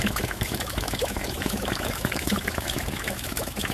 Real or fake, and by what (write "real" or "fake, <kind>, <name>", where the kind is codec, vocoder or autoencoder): fake, autoencoder, DAC-VAE